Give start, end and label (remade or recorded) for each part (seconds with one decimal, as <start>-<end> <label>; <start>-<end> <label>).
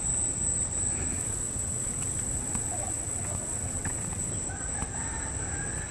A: 0.0-1.1 recorded; 1.1-4.3 remade; 4.3-5.9 recorded